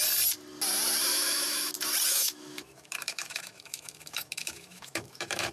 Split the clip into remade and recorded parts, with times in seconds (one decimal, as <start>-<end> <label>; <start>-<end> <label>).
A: 0.0-1.1 recorded; 1.1-1.7 remade; 1.7-2.1 recorded; 2.1-5.5 remade